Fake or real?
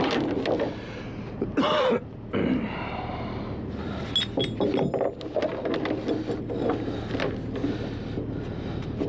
real